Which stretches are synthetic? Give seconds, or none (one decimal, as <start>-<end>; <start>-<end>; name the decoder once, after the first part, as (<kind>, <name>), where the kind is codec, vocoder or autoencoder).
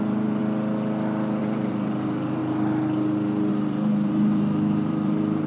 0.0-0.4 (vocoder, BigVGAN v2); 1.4-2.4; 3.5-5.5